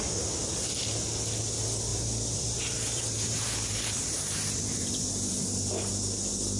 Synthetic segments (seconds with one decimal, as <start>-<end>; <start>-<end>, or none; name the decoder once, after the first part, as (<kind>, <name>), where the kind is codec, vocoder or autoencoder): 1.9-5.9 (vocoder, BigVGAN v2)